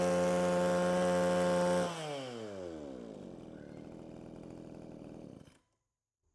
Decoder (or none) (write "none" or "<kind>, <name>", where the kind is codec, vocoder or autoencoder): none